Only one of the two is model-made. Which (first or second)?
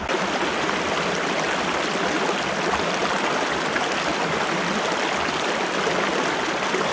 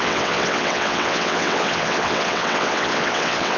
second